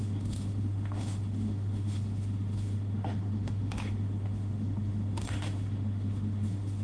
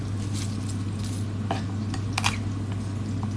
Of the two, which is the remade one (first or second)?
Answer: first